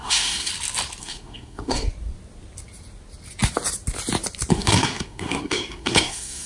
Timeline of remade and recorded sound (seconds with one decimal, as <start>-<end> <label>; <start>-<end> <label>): 0.0-0.5 remade; 0.5-1.0 recorded; 1.0-1.9 remade; 1.9-4.5 recorded; 4.5-6.5 remade

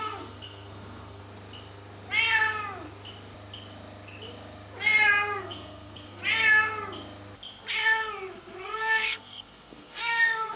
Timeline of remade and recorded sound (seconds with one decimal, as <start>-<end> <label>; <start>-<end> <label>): 0.0-1.2 remade; 1.2-5.4 recorded; 5.4-6.2 remade; 6.2-8.6 recorded; 8.6-10.6 remade

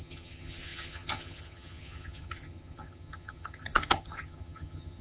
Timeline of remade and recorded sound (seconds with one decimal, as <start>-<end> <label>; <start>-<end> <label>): 0.0-5.0 remade

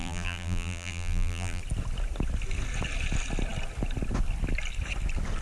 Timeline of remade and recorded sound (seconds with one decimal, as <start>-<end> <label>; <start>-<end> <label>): 0.0-1.6 remade; 1.6-5.4 recorded